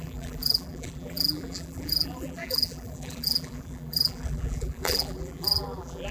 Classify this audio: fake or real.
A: fake